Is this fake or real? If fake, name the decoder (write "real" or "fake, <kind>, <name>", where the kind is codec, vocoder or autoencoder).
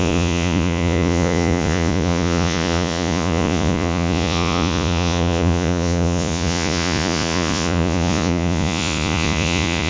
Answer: fake, vocoder, Vocos